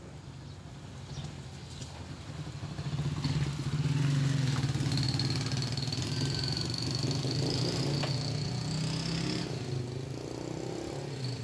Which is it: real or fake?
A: real